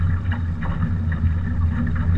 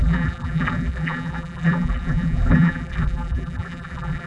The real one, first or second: first